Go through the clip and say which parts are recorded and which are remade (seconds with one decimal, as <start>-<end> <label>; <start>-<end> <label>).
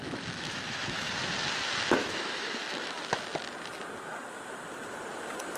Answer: 0.0-1.1 remade; 1.1-2.0 recorded; 2.0-3.0 remade; 3.0-5.6 recorded